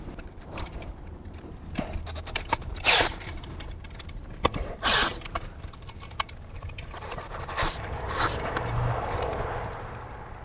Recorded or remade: remade